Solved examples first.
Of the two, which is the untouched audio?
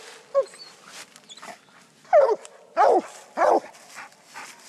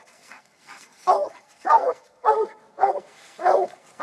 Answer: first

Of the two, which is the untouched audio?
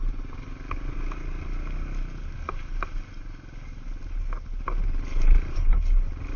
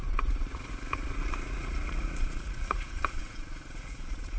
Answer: first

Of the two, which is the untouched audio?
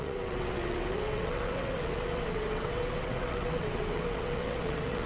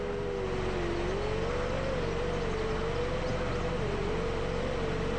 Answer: second